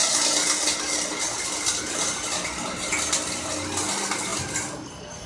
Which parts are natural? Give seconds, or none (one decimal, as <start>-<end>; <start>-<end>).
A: 0.0-5.3